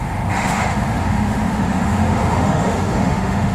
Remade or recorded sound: remade